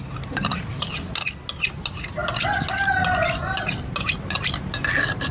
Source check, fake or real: real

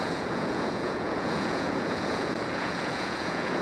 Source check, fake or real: fake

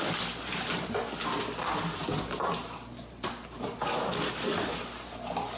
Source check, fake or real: real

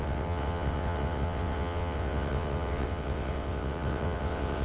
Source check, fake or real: fake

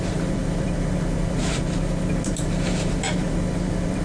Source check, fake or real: fake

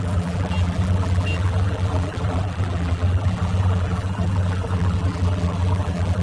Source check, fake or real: fake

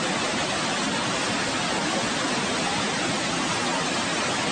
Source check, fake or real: real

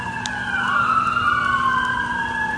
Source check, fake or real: real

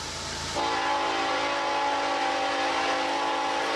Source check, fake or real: real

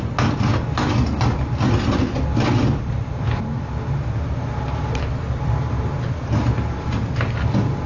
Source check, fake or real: real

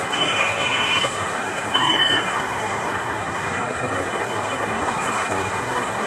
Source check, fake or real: fake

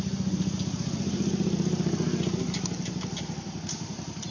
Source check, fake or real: real